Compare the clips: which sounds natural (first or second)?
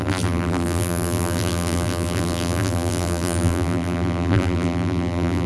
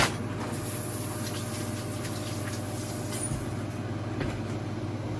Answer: second